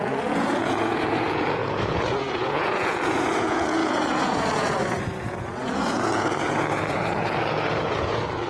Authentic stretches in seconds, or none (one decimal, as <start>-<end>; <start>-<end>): none